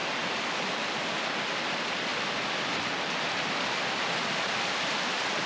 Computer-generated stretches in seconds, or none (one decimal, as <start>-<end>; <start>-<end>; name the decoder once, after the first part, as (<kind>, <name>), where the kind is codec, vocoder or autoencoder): 0.0-5.5 (vocoder, BigVGAN v2)